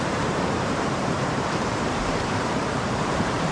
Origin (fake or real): fake